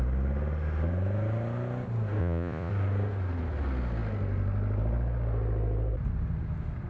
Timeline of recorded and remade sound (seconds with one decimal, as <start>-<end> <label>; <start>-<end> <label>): 0.0-2.2 recorded; 2.2-2.7 remade; 2.7-6.9 recorded